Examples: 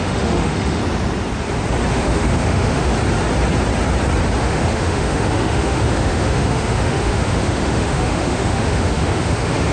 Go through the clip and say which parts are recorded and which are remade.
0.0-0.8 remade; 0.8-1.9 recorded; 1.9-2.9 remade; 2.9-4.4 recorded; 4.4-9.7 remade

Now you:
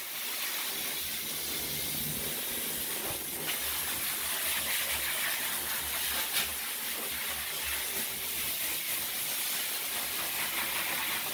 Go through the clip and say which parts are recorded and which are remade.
0.0-11.3 recorded

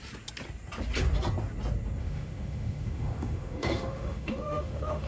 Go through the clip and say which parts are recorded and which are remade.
0.0-2.0 recorded; 2.0-5.1 remade

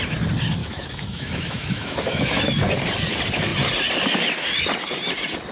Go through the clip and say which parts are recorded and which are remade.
0.0-0.6 recorded; 0.6-2.4 remade; 2.4-5.5 recorded

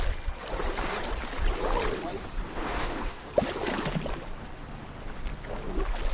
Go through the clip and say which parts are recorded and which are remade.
0.0-2.5 recorded; 2.5-3.3 remade; 3.3-6.1 recorded